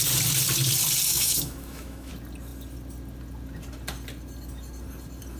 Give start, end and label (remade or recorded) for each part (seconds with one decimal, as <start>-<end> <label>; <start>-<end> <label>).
0.0-1.1 recorded; 1.1-2.1 remade; 2.1-5.4 recorded